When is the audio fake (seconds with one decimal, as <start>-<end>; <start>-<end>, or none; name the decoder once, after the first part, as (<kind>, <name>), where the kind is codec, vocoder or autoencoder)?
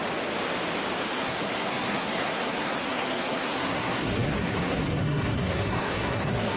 1.1-6.6 (codec, SNAC)